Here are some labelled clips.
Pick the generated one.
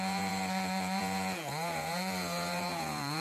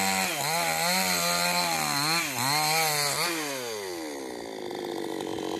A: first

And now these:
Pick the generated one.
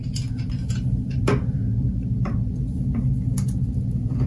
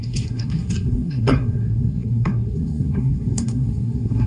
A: second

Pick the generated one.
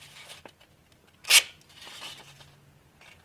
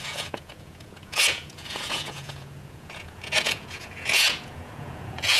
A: second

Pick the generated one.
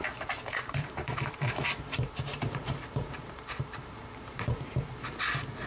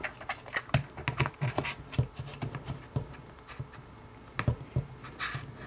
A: first